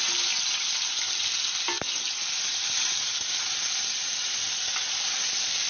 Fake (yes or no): no